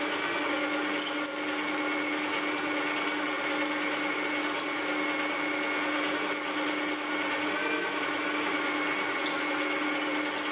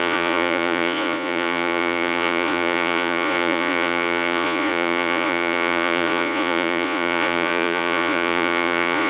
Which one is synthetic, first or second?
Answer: second